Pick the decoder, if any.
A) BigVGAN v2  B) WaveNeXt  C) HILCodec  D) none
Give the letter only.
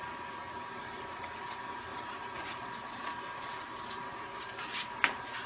D